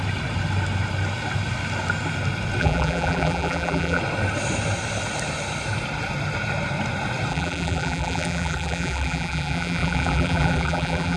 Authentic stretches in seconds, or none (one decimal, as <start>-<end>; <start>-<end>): 0.0-2.6; 4.0-7.3